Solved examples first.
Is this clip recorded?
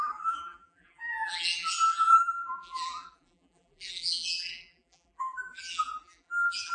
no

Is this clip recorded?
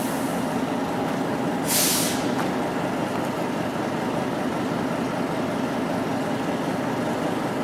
yes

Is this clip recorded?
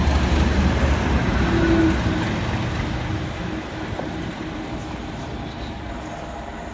yes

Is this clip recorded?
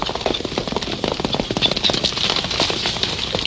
yes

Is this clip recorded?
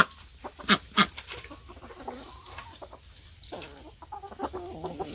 yes